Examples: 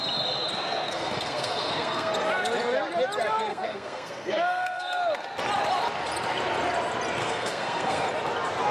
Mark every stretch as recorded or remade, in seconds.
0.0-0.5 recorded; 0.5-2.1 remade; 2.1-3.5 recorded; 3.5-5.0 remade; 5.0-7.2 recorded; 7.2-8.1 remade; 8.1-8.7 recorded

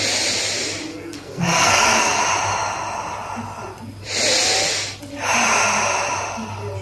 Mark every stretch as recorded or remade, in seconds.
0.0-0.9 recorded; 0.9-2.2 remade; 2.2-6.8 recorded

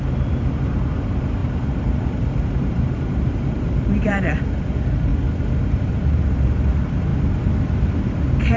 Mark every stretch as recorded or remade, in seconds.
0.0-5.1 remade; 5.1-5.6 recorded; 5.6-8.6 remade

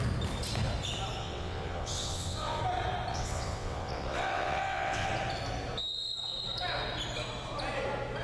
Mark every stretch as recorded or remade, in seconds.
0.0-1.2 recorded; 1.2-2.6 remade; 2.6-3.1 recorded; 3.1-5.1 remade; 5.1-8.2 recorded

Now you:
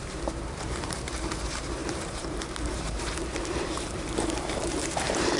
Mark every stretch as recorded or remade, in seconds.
0.0-5.4 remade

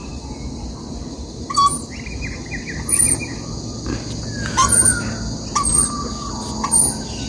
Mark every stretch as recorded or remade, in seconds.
0.0-7.3 recorded

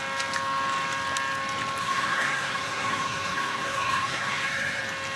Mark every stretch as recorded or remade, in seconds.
0.0-1.8 recorded; 1.8-4.8 remade; 4.8-5.2 recorded